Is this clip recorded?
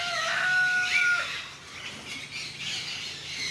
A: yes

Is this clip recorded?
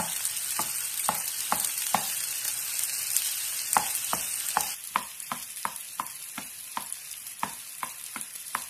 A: yes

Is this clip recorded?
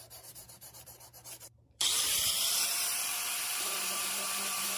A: no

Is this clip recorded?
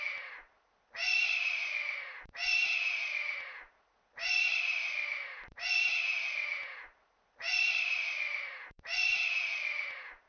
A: no